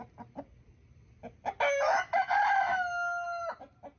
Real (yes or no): yes